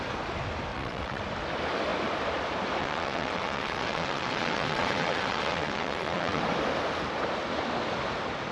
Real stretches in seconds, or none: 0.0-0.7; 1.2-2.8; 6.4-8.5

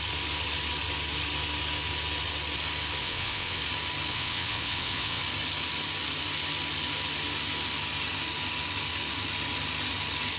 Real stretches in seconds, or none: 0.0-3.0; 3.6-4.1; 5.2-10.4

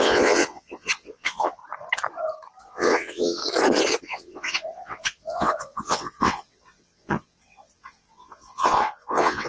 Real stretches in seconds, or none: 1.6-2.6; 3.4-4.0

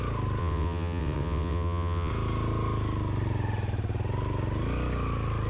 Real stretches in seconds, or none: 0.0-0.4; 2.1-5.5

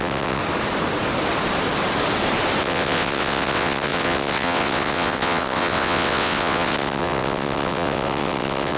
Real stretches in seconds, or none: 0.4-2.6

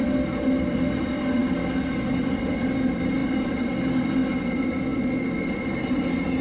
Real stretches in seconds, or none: 0.0-6.4